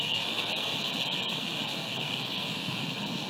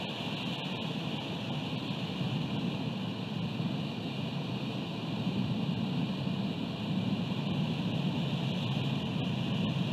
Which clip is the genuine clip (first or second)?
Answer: second